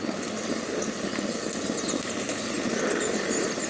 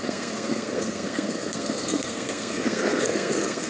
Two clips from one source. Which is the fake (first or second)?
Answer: second